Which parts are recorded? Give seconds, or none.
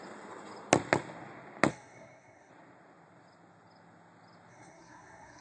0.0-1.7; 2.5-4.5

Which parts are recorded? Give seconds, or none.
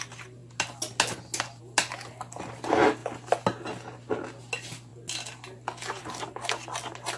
0.0-7.2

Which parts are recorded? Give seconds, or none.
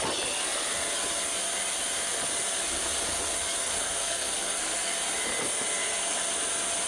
0.0-3.6; 4.9-6.9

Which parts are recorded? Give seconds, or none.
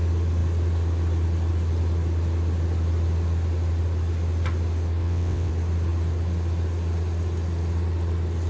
0.0-5.0; 5.5-8.5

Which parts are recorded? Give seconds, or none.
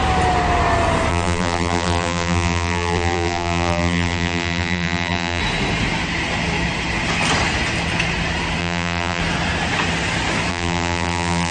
0.0-1.1; 5.4-8.6; 9.2-10.5